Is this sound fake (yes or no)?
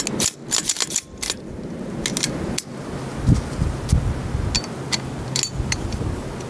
no